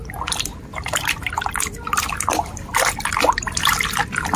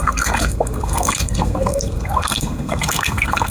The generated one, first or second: second